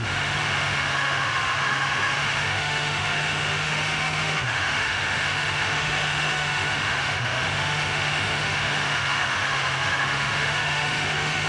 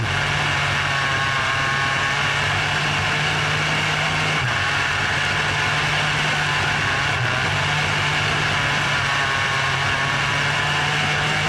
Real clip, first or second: second